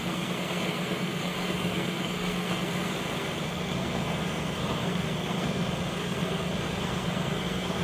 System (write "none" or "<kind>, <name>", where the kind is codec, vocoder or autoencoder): codec, SNAC